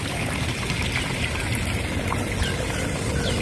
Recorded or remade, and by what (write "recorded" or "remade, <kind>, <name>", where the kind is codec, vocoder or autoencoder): recorded